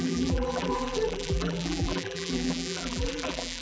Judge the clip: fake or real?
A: fake